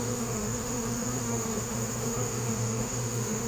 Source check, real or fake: fake